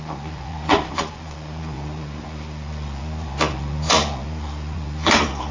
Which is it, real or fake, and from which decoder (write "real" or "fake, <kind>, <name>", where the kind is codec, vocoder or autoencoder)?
fake, vocoder, Vocos